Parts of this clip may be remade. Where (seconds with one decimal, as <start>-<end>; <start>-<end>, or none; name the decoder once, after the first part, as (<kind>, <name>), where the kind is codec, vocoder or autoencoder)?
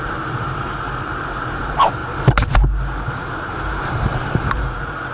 0.0-2.0 (vocoder, BigVGAN v2); 3.1-5.1